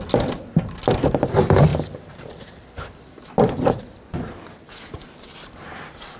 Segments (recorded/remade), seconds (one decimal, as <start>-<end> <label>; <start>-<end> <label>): 0.0-6.2 recorded